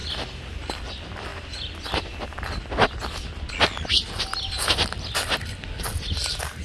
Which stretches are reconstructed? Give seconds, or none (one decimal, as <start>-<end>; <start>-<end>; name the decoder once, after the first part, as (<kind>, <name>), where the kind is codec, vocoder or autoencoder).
none